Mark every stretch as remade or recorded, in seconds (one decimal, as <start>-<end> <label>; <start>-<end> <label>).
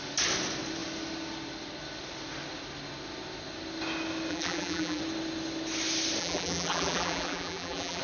0.0-4.3 recorded; 4.3-5.0 remade; 5.0-6.2 recorded; 6.2-8.0 remade